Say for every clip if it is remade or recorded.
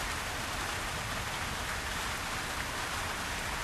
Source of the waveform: recorded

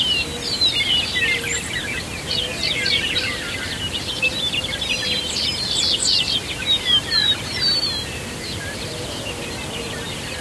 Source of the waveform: remade